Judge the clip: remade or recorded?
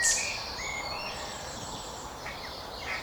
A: remade